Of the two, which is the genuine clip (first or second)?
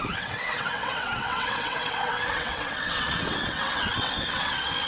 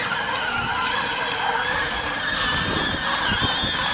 second